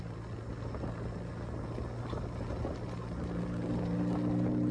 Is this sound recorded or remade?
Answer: recorded